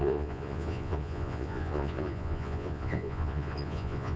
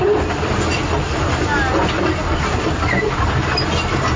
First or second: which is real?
second